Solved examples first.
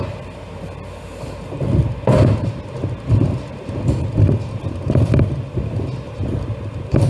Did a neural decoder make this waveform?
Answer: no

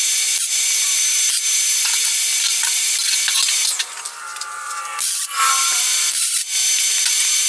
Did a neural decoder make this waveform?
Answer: no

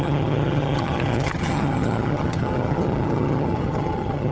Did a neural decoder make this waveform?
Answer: yes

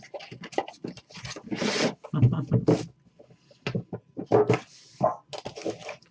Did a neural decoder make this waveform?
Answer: no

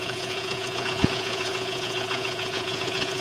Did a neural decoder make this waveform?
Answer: yes